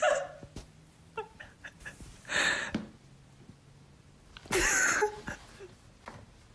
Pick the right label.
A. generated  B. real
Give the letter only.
B